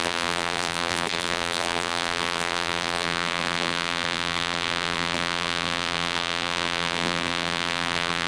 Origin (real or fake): fake